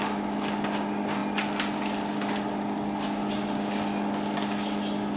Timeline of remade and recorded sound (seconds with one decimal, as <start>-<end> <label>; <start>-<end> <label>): 0.0-5.2 recorded